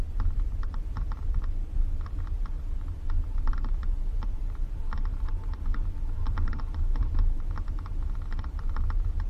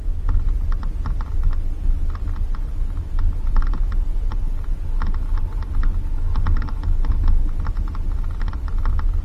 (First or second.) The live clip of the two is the second